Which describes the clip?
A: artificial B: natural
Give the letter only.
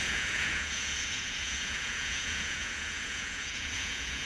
A